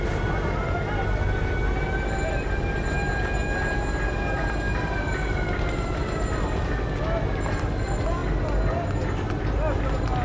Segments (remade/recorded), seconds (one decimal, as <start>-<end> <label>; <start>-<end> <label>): 0.0-10.2 recorded